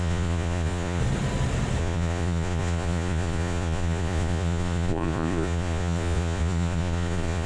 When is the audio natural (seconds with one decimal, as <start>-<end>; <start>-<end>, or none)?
1.0-1.8